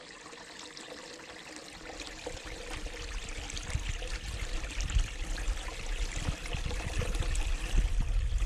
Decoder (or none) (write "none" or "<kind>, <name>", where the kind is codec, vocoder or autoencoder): none